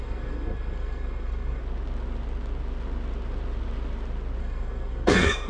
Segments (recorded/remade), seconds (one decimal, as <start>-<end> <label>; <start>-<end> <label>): 0.0-1.6 remade; 1.6-4.4 recorded; 4.4-5.5 remade